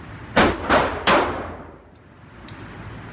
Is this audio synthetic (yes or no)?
no